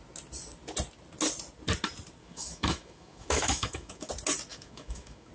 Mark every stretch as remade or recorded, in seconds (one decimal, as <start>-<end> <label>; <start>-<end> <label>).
0.0-2.2 recorded; 2.2-4.1 remade; 4.1-4.5 recorded; 4.5-5.3 remade